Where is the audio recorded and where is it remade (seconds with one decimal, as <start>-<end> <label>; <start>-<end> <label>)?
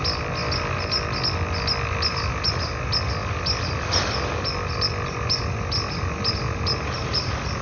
0.0-7.6 recorded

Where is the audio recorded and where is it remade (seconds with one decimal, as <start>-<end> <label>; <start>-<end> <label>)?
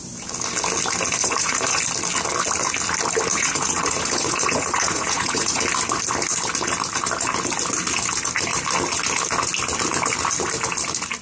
0.0-1.2 recorded; 1.2-1.8 remade; 1.8-3.3 recorded; 3.3-5.6 remade; 5.6-11.2 recorded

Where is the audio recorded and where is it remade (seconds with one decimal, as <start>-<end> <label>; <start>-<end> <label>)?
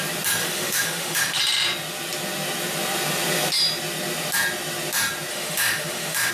0.0-0.4 recorded; 0.4-1.4 remade; 1.4-5.3 recorded; 5.3-6.3 remade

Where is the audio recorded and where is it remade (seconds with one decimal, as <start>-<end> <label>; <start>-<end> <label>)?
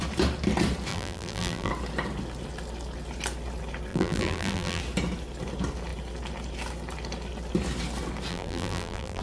0.0-0.9 recorded; 0.9-1.7 remade; 1.7-3.9 recorded; 3.9-4.8 remade; 4.8-8.3 recorded; 8.3-9.2 remade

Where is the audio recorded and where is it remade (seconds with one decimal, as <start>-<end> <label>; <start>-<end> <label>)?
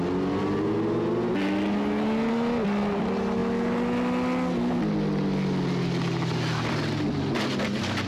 0.0-8.1 recorded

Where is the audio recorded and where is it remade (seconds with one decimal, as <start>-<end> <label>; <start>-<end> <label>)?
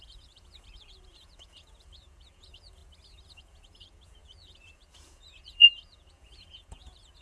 0.0-2.8 remade; 2.8-3.3 recorded; 3.3-7.2 remade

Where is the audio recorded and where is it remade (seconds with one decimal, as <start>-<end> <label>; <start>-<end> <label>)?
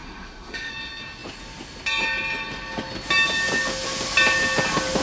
0.0-0.7 remade; 0.7-5.0 recorded